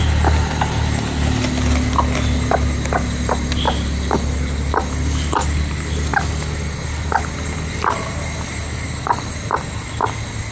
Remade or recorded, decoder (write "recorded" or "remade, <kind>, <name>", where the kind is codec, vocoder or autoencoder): recorded